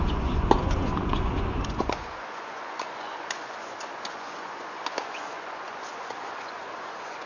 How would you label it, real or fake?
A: fake